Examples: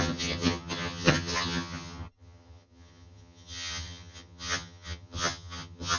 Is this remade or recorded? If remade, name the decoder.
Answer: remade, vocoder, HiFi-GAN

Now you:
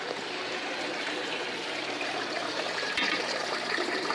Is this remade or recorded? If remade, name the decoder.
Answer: remade, vocoder, BigVGAN v2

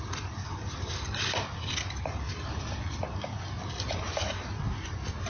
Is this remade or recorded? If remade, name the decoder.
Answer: recorded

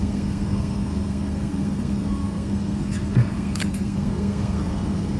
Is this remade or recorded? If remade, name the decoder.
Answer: remade, codec, SNAC